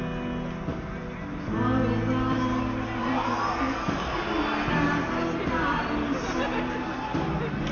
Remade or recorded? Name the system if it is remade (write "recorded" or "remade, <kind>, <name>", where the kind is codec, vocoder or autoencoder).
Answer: recorded